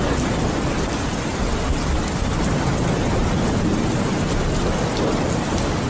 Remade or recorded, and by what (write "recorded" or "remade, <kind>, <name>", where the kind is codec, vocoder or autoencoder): recorded